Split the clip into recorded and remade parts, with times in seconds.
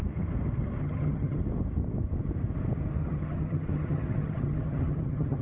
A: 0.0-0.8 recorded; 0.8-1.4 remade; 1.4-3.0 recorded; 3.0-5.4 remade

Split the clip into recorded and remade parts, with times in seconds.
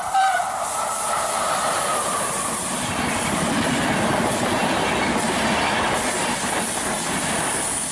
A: 0.0-7.9 remade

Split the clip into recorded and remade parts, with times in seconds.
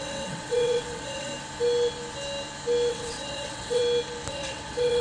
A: 0.0-1.3 remade; 1.3-2.9 recorded; 2.9-3.8 remade; 3.8-4.3 recorded; 4.3-5.0 remade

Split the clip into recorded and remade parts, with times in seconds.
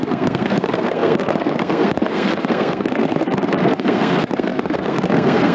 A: 0.0-5.5 remade